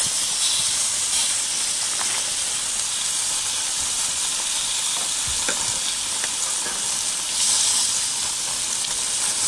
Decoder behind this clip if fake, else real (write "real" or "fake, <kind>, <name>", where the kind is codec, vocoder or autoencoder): real